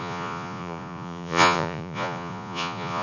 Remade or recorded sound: remade